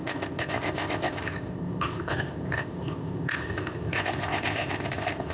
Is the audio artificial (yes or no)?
yes